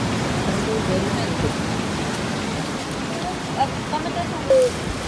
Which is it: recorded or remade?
recorded